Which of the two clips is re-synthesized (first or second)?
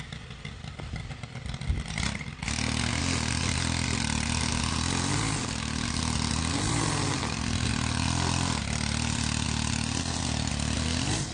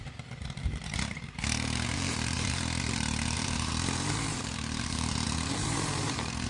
second